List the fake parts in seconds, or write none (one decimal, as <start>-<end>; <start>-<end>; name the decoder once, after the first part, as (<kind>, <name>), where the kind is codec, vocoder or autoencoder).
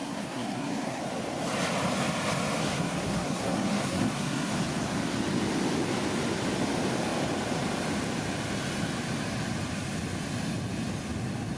0.0-1.0 (codec, SNAC); 2.6-4.5